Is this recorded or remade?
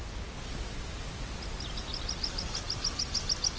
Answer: recorded